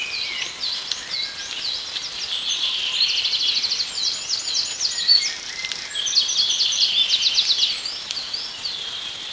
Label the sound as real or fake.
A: real